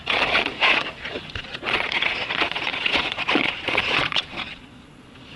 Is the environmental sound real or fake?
fake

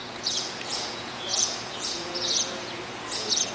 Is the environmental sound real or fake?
fake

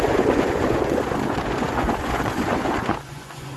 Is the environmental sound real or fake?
fake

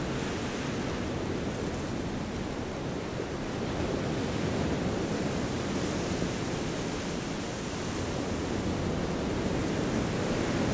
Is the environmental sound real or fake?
real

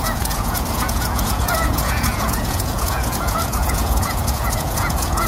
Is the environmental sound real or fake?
fake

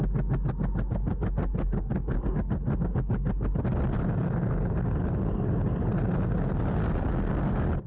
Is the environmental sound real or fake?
real